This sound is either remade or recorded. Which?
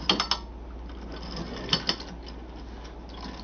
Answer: recorded